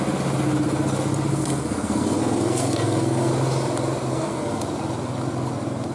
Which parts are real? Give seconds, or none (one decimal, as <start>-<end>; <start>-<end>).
0.0-1.3; 3.3-4.1; 4.6-5.9